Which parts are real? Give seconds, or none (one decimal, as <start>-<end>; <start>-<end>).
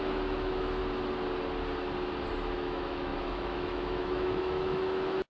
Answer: 0.8-2.3